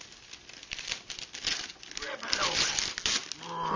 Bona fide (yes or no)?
yes